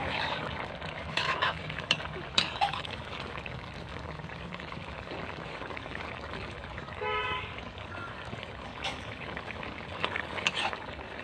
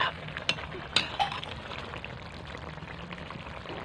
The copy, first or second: first